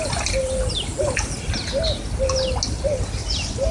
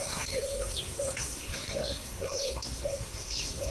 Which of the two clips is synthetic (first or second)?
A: second